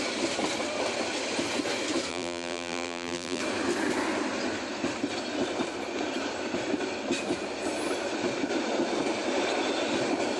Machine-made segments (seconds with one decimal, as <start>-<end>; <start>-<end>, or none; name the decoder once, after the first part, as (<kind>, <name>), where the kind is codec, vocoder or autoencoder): 2.1-3.4 (vocoder, BigVGAN v2)

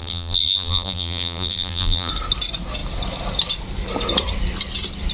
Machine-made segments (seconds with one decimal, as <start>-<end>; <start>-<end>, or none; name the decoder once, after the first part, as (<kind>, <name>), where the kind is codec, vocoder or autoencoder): 0.0-2.1 (vocoder, BigVGAN v2)